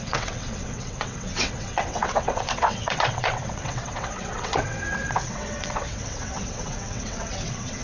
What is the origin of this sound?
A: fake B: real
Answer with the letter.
A